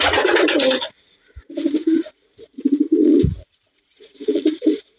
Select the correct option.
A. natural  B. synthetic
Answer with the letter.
B